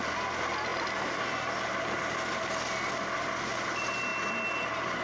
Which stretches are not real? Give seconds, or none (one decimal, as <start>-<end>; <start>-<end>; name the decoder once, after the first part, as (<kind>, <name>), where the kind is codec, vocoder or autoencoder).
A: none